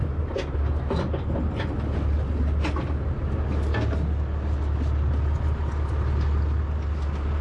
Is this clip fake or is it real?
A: real